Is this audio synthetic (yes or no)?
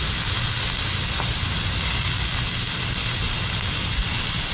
no